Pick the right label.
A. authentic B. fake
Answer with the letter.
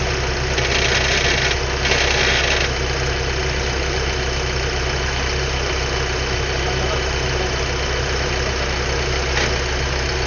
A